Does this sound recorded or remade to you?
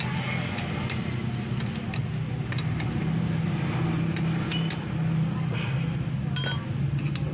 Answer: recorded